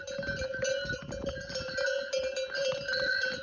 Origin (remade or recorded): recorded